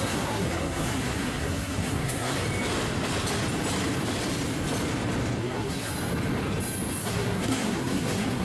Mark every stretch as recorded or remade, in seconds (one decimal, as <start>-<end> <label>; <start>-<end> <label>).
0.0-2.4 remade; 2.4-5.4 recorded; 5.4-5.9 remade; 5.9-7.0 recorded; 7.0-8.4 remade